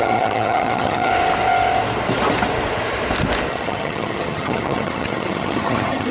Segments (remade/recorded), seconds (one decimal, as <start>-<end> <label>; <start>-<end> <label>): 0.0-1.1 remade; 1.1-3.5 recorded; 3.5-6.1 remade

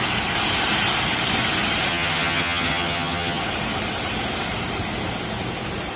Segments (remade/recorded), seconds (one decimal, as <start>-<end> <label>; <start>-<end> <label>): 0.0-1.9 recorded; 1.9-3.4 remade; 3.4-6.0 recorded

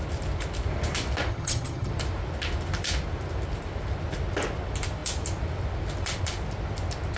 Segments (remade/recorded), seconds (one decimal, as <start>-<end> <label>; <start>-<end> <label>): 0.0-1.3 recorded; 1.3-1.9 remade; 1.9-7.2 recorded

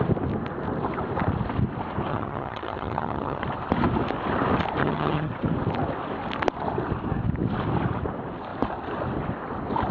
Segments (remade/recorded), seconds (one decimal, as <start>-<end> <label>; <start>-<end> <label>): 0.0-2.1 recorded; 2.1-3.4 remade; 3.4-4.8 recorded; 4.8-5.3 remade; 5.3-9.9 recorded

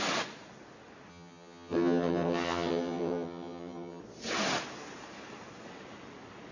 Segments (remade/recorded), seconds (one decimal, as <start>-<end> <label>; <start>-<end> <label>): 0.0-1.1 recorded; 1.1-4.0 remade; 4.0-6.5 recorded